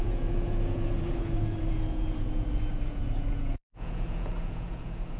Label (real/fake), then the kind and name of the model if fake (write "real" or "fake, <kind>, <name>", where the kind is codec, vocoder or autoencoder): fake, vocoder, Vocos